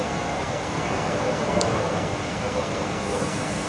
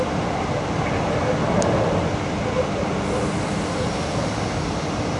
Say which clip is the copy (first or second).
first